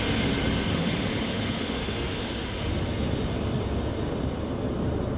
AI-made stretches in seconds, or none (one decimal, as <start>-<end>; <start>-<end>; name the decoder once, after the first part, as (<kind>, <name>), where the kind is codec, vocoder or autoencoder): 0.7-2.7 (autoencoder, DAC-VAE)